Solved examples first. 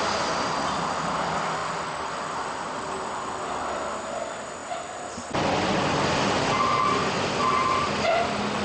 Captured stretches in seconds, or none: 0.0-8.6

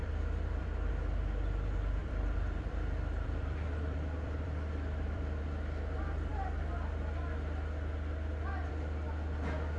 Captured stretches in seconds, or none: 0.9-2.0; 5.4-9.8

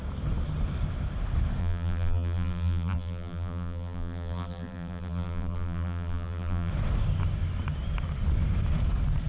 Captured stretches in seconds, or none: 0.0-1.6; 6.7-9.3

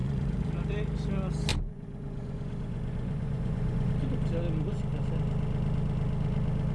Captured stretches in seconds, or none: 0.5-1.5; 3.9-6.7

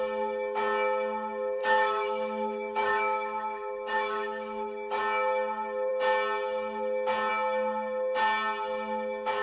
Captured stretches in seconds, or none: 0.0-1.6; 5.0-9.4

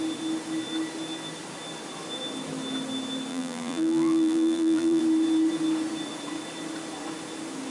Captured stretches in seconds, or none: 0.0-3.3; 5.0-7.7